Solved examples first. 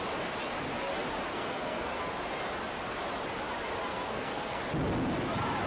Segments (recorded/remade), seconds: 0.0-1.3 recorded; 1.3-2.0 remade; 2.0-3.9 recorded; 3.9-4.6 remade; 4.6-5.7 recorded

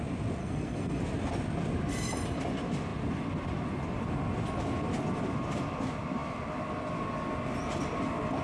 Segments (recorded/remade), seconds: 0.0-0.4 recorded; 0.4-1.0 remade; 1.0-8.4 recorded

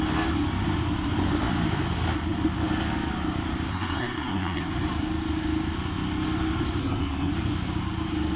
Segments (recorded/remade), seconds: 0.0-3.7 recorded; 3.7-4.7 remade; 4.7-6.8 recorded; 6.8-7.3 remade; 7.3-8.4 recorded

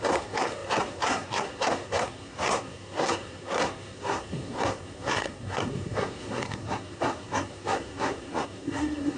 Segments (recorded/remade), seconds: 0.0-9.2 remade

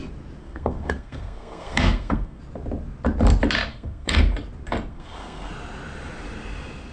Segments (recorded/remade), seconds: 0.0-0.4 recorded; 0.4-2.4 remade; 2.4-3.7 recorded; 3.7-4.2 remade; 4.2-4.9 recorded; 4.9-5.5 remade; 5.5-6.9 recorded

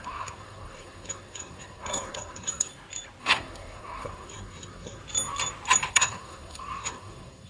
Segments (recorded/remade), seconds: 0.0-2.7 remade; 2.7-3.2 recorded; 3.2-5.0 remade; 5.0-5.9 recorded; 5.9-7.5 remade